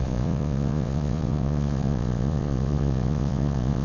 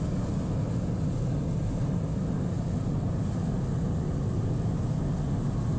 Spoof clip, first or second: first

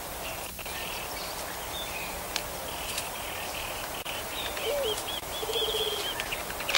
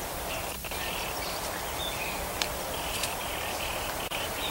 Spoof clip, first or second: second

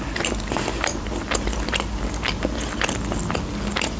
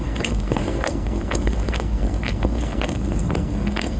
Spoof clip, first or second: second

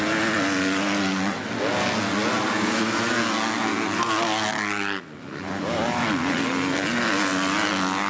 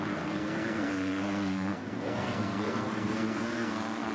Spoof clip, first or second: second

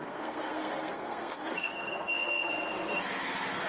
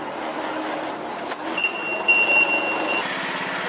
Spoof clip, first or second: first